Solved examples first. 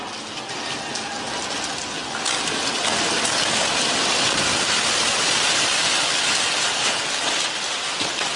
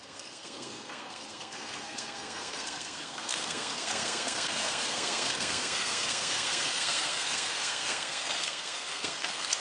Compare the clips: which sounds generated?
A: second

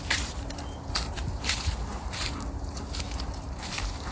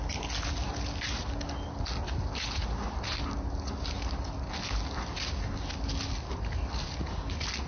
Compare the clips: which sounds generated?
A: first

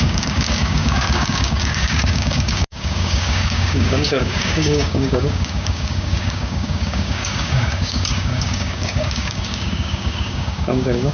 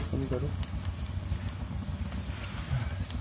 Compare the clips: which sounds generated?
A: first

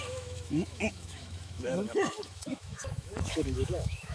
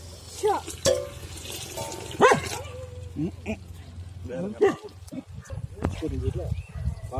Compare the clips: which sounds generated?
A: first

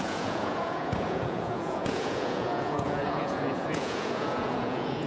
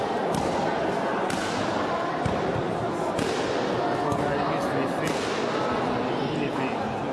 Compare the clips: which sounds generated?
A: first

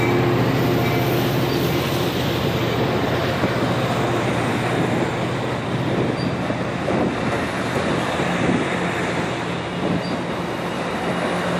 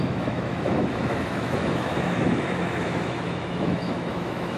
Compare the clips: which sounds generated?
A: second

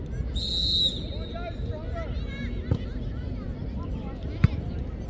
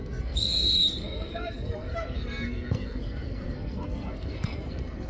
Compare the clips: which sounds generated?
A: second